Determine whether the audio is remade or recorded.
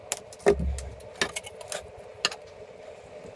recorded